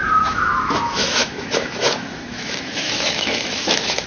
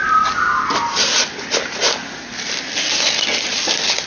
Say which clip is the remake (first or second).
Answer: first